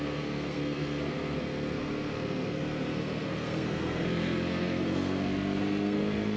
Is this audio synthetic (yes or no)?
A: yes